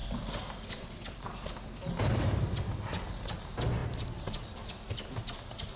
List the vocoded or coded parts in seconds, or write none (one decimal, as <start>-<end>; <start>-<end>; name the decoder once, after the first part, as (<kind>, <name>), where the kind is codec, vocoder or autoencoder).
none